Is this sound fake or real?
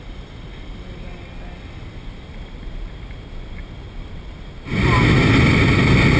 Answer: real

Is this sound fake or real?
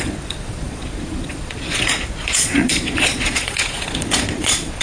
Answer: fake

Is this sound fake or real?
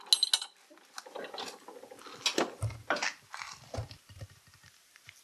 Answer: real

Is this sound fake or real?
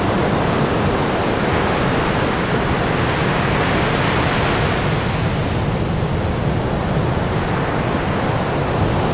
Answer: real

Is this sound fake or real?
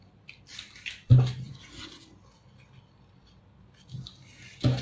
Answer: real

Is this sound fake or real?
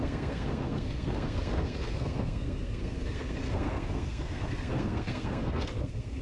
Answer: fake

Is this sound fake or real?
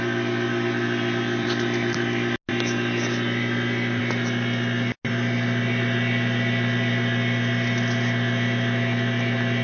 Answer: real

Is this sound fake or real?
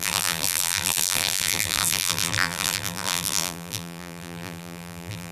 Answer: fake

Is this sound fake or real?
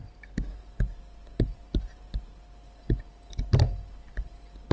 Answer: real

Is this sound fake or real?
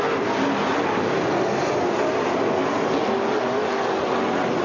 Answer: real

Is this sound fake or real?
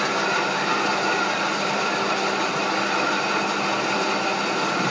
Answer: real